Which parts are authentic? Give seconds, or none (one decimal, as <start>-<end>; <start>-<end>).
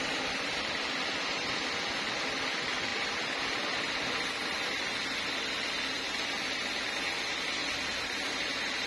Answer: 0.0-8.9